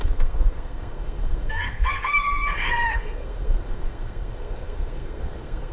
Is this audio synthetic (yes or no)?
yes